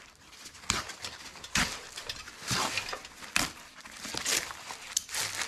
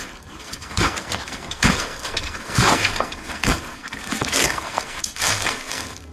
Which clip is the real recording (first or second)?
first